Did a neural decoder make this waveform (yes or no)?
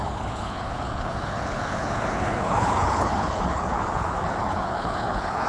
yes